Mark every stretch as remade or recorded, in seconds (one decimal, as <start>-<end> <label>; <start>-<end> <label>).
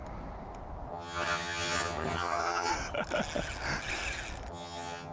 0.0-0.9 recorded; 0.9-2.7 remade; 2.7-4.5 recorded; 4.5-5.1 remade